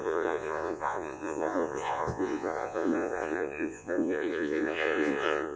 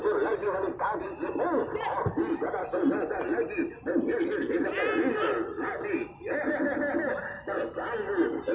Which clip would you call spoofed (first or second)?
first